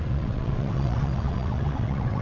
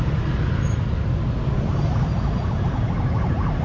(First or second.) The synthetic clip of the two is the first